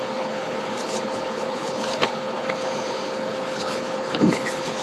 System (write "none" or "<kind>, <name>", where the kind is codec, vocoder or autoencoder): codec, HILCodec